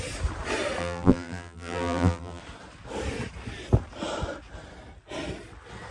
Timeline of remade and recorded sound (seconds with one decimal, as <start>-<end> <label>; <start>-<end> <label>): 0.0-0.8 recorded; 0.8-2.4 remade; 2.4-5.9 recorded